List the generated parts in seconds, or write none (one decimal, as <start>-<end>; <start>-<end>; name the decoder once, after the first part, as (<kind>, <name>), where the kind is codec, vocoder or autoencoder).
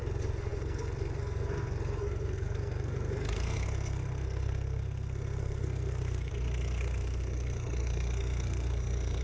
0.0-9.2 (codec, SNAC)